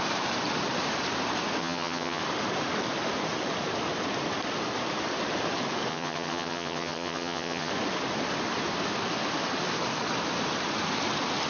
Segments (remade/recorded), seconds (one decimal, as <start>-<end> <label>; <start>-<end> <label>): 0.0-1.6 recorded; 1.6-2.2 remade; 2.2-5.9 recorded; 5.9-7.7 remade; 7.7-11.5 recorded